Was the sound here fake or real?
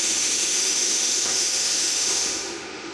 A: fake